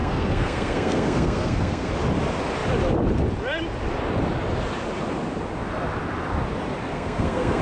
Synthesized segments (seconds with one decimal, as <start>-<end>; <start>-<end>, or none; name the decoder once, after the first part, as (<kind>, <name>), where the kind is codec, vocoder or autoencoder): 0.0-1.9 (codec, SNAC); 6.9-7.6